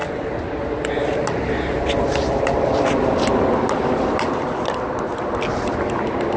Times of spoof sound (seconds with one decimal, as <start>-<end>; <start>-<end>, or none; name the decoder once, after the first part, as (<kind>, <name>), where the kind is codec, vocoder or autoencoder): none